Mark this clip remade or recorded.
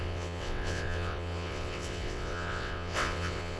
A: remade